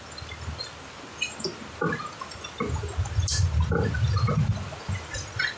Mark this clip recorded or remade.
recorded